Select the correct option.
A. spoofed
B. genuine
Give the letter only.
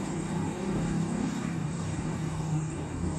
A